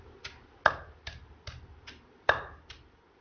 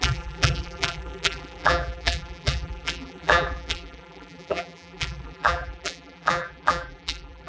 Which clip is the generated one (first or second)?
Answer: second